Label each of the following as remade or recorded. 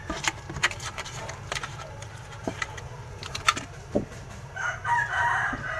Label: remade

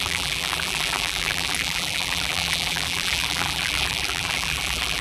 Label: remade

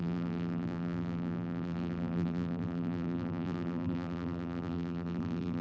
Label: remade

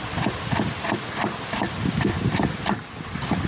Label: recorded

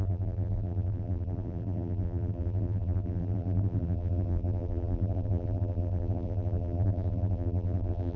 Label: remade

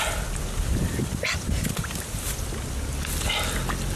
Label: recorded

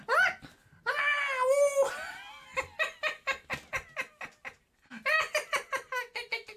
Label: recorded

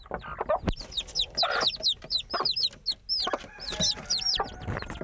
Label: recorded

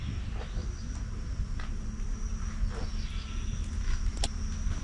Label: recorded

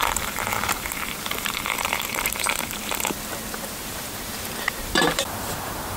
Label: remade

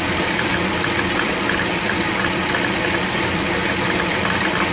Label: remade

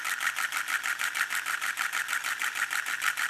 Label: recorded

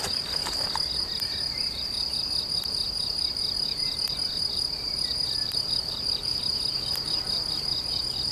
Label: recorded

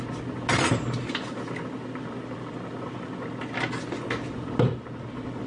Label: recorded